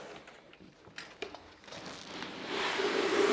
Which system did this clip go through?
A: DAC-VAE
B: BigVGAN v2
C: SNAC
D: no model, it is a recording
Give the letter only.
D